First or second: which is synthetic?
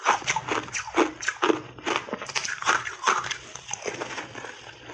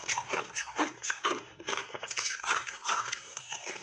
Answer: second